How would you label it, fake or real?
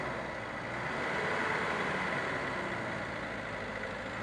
real